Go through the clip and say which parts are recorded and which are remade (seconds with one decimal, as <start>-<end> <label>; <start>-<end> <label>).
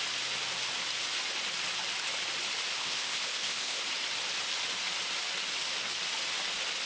0.0-2.8 recorded; 2.8-3.8 remade; 3.8-6.9 recorded